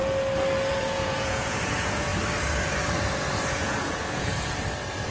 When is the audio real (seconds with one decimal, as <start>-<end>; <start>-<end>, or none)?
0.0-0.7; 2.1-3.5; 4.3-5.1